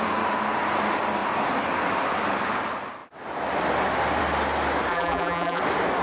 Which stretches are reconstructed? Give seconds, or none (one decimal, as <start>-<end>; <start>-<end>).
4.9-5.6